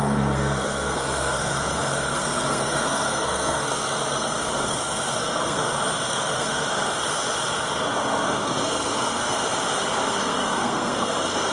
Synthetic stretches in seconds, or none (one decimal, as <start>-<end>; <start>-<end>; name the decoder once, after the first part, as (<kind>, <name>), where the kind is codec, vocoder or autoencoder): 0.0-5.6 (codec, SNAC); 6.1-7.0; 7.8-9.4; 10.1-11.5